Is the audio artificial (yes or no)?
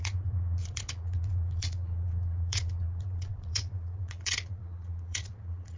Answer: yes